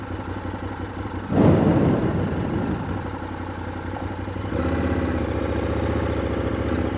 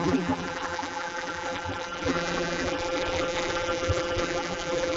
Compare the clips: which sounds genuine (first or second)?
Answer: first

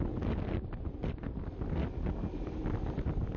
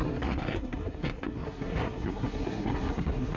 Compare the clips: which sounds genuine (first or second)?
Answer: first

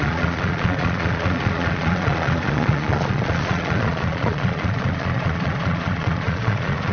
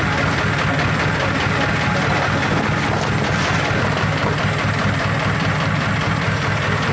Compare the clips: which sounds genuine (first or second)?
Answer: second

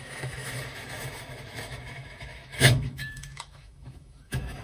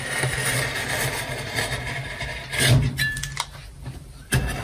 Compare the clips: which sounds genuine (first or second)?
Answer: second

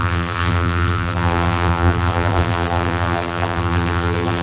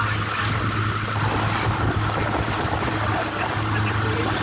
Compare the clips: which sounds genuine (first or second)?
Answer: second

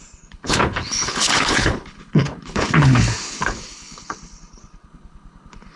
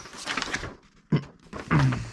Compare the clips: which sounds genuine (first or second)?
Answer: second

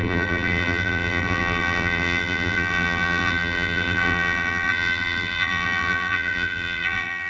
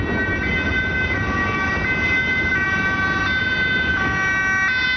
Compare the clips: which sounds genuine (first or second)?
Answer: second